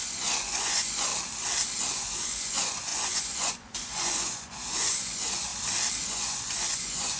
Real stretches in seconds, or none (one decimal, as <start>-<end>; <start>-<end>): 1.1-1.8; 5.5-6.0